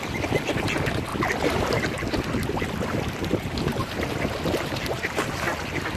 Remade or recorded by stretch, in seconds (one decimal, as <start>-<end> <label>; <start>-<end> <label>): 0.0-6.0 recorded